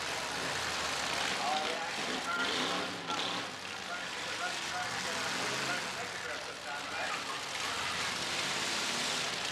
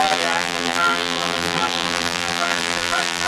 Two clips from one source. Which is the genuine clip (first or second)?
first